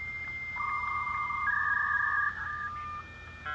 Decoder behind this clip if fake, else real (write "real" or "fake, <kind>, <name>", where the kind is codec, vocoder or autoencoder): real